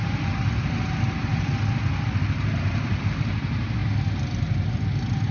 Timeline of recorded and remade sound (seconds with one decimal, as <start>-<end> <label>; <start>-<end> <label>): 0.0-5.3 recorded